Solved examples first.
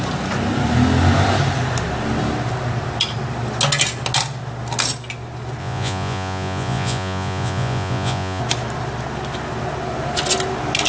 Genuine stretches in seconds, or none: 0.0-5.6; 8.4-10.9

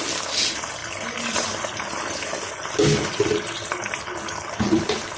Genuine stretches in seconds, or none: 0.0-5.2

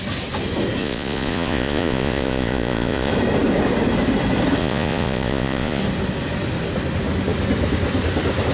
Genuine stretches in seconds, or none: 0.0-0.8; 3.1-4.6; 5.8-8.5

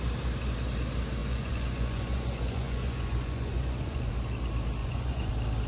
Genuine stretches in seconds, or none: 0.0-1.2; 4.1-4.8; 5.3-5.7